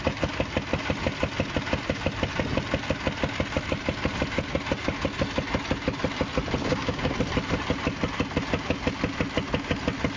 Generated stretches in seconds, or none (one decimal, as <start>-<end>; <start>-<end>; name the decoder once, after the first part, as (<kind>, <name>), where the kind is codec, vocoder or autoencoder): 6.6-7.1 (codec, DAC)